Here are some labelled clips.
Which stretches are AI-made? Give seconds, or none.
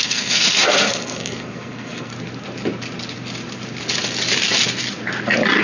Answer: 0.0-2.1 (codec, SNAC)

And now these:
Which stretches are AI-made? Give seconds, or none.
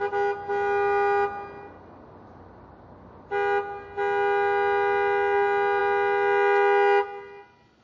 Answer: none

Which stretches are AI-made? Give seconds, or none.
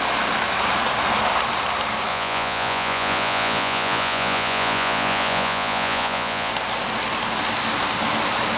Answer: 2.1-6.5 (vocoder, Vocos)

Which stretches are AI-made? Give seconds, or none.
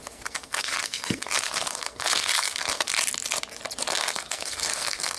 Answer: 0.0-2.9 (codec, SNAC); 3.9-5.2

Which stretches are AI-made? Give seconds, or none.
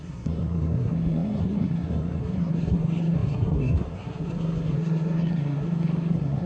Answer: 0.0-6.5 (codec, SNAC)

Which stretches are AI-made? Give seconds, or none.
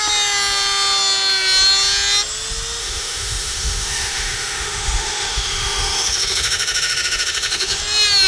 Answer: 2.8-7.8 (autoencoder, DAC-VAE)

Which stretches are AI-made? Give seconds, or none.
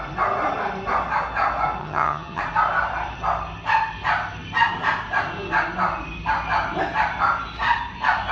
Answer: 1.8-2.4 (vocoder, HiFi-GAN)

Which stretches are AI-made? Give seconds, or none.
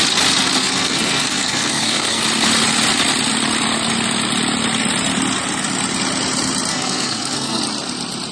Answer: 0.6-2.2 (codec, SNAC); 6.7-7.6